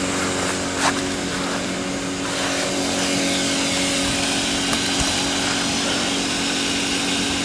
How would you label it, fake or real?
real